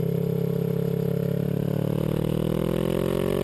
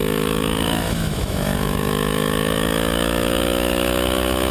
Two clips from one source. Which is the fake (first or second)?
second